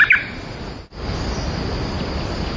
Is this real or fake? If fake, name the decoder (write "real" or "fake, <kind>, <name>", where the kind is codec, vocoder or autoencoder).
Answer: real